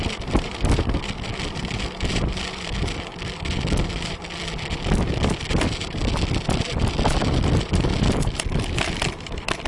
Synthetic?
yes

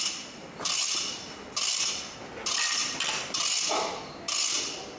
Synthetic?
no